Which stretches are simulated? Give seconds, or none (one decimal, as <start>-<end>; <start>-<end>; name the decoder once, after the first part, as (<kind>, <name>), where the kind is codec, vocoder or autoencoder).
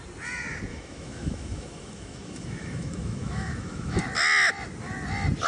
0.7-4.0 (autoencoder, DAC-VAE)